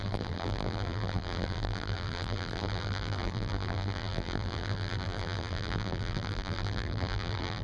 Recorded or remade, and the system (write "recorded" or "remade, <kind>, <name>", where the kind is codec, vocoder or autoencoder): remade, vocoder, BigVGAN v2